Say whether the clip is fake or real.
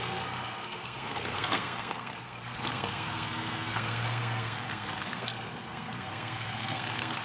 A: fake